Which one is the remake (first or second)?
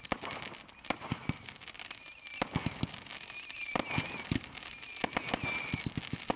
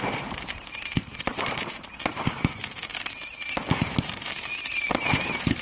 second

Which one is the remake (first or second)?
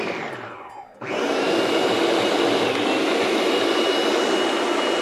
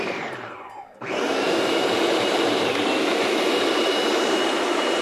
second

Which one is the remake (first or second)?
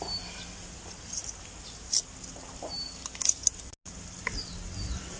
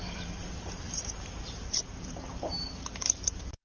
second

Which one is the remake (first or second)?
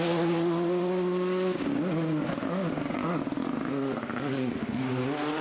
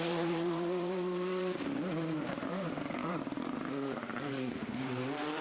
second